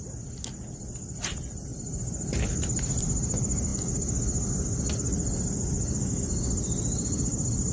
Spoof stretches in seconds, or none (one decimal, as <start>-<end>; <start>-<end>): none